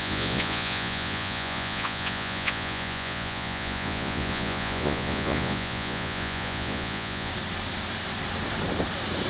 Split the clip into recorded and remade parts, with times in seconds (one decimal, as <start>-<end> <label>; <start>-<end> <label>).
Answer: 0.0-7.3 remade; 7.3-9.3 recorded